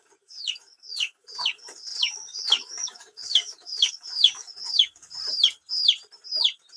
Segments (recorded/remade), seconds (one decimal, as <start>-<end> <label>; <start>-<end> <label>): 0.0-5.2 remade; 5.2-6.8 recorded